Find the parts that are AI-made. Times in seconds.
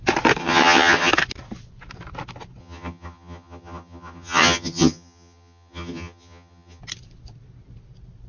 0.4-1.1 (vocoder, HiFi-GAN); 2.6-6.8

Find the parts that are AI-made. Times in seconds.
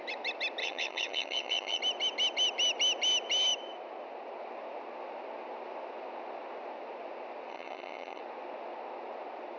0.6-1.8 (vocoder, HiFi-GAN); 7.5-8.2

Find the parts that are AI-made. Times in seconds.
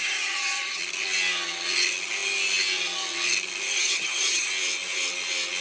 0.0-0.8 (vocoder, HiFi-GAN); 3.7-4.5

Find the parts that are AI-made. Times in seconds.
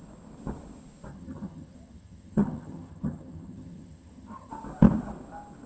1.1-4.5 (vocoder, HiFi-GAN)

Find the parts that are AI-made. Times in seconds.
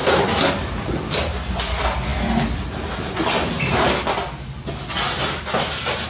none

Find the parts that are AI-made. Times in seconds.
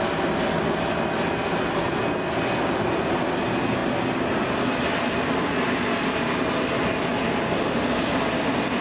none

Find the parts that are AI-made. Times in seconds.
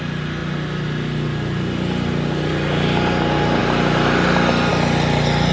none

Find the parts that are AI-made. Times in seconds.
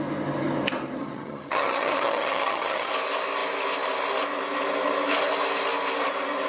1.0-2.9 (vocoder, HiFi-GAN)